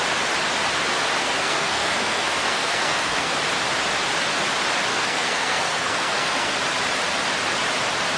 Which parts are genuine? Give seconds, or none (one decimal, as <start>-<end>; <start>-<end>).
0.0-1.2; 3.3-4.9; 6.5-8.2

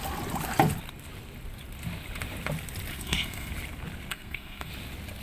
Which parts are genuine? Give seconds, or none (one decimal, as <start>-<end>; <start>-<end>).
0.0-2.9; 3.5-4.1; 4.7-5.2

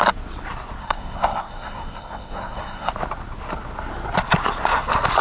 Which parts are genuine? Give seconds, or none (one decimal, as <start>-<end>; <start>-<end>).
0.0-0.8; 2.9-5.2

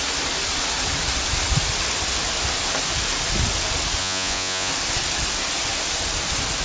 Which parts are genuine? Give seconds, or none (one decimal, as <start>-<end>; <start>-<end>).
0.0-4.0; 4.7-6.6

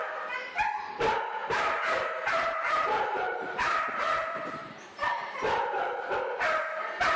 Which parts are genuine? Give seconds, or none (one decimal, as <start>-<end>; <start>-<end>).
0.0-1.4; 5.7-7.2